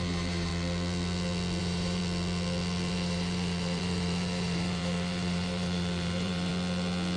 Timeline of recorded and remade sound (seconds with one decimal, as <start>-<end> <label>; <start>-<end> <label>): 0.0-0.5 remade; 0.5-1.6 recorded; 1.6-2.0 remade; 2.0-2.9 recorded; 2.9-6.5 remade; 6.5-7.2 recorded

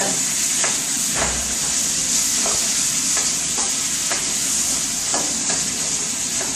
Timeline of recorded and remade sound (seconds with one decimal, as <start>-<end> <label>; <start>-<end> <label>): 0.0-2.0 remade; 2.0-3.9 recorded; 3.9-6.6 remade

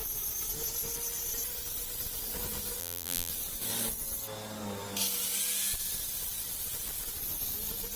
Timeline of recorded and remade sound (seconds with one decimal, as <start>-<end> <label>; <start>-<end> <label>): 0.0-2.8 recorded; 2.8-3.3 remade; 3.3-8.0 recorded

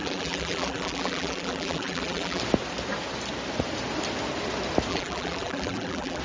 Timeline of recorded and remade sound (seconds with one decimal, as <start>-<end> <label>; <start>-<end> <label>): 0.0-2.4 remade; 2.4-4.9 recorded; 4.9-6.2 remade

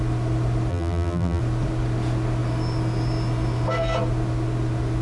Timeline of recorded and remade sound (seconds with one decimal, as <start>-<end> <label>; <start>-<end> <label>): 0.0-0.7 recorded; 0.7-1.4 remade; 1.4-5.0 recorded

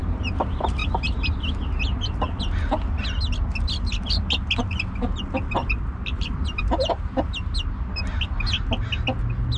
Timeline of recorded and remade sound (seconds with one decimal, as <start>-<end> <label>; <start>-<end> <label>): 0.0-0.8 recorded; 0.8-1.4 remade; 1.4-5.6 recorded; 5.6-7.3 remade; 7.3-9.6 recorded